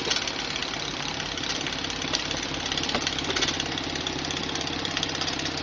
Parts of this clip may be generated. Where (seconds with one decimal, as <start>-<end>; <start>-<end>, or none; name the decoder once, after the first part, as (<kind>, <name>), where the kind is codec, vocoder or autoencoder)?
4.4-5.6 (vocoder, BigVGAN v2)